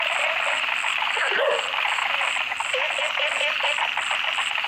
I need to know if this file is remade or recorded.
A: recorded